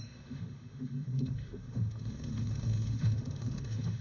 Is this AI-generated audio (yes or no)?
yes